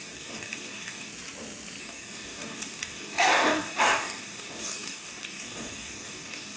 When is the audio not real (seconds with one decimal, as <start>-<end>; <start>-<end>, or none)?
0.0-1.1; 1.8-6.6